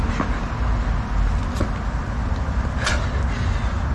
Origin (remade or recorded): recorded